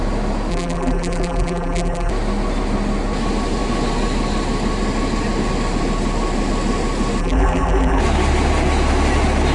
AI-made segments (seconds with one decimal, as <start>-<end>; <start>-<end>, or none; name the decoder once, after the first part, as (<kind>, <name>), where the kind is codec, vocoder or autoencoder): 0.5-2.1 (vocoder, BigVGAN v2); 7.2-8.0